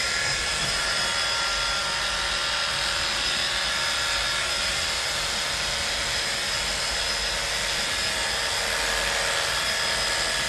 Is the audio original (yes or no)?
yes